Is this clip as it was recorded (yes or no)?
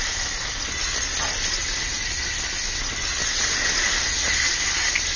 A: yes